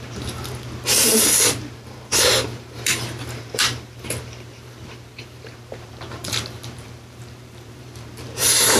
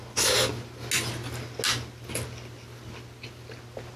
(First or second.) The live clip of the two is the second